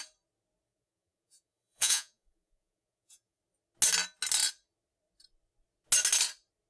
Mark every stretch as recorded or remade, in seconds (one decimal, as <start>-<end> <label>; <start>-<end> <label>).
0.0-0.7 recorded; 0.7-3.4 remade; 3.4-6.7 recorded